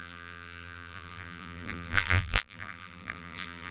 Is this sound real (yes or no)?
no